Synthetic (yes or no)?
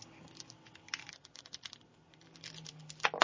no